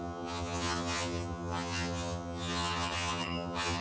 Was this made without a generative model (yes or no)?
no